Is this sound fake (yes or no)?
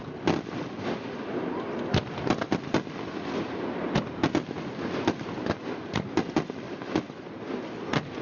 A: no